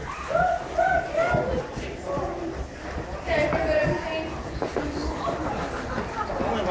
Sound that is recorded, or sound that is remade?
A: recorded